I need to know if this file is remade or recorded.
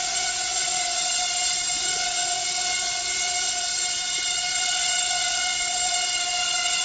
remade